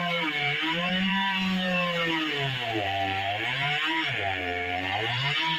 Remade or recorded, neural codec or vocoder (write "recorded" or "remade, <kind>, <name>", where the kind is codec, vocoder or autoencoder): remade, vocoder, BigVGAN v2